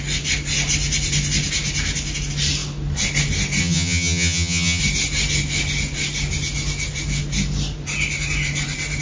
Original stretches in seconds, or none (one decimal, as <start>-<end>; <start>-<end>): 0.0-3.6; 4.8-9.0